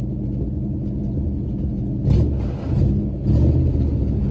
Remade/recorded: recorded